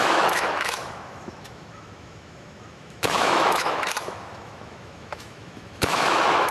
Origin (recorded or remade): remade